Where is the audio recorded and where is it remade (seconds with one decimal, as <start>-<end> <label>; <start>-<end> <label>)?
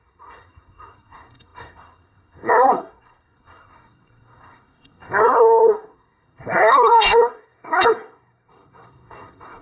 0.0-9.6 remade